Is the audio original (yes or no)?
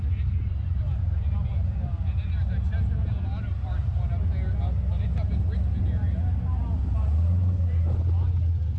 yes